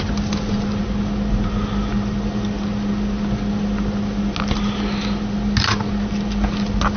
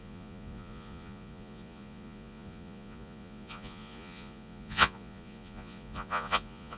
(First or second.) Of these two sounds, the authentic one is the first